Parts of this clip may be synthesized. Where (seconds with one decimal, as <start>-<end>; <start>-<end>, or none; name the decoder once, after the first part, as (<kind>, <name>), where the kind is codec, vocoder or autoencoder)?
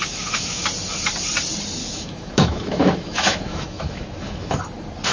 0.0-0.6 (autoencoder, DAC-VAE); 1.8-4.6